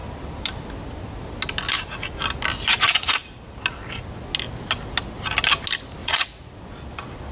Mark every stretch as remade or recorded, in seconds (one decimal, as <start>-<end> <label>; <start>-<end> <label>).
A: 0.0-2.7 recorded; 2.7-3.3 remade; 3.3-6.0 recorded; 6.0-6.5 remade; 6.5-7.3 recorded